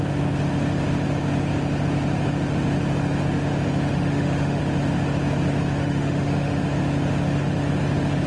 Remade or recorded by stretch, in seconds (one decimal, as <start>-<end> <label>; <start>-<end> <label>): 0.0-3.9 recorded; 3.9-4.6 remade; 4.6-5.8 recorded; 5.8-6.6 remade; 6.6-8.3 recorded